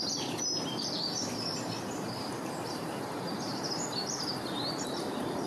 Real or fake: fake